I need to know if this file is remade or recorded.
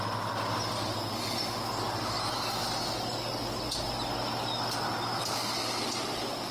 recorded